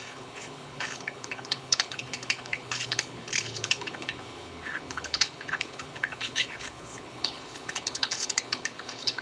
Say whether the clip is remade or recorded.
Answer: remade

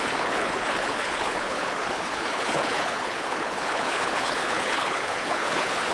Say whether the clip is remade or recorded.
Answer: remade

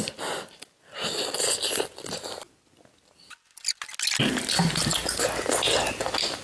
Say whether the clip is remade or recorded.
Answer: recorded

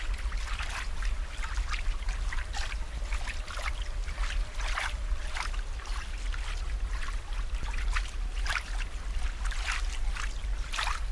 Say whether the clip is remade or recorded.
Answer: recorded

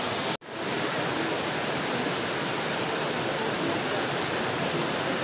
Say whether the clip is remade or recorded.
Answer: recorded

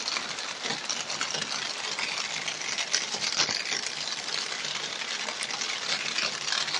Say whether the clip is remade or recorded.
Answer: recorded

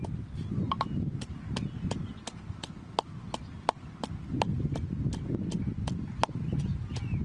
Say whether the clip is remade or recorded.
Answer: recorded